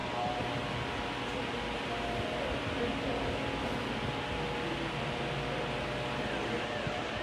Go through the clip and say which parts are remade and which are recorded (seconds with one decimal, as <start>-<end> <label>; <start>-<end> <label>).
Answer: 0.0-0.5 remade; 0.5-7.2 recorded